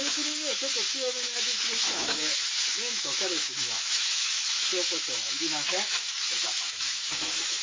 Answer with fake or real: fake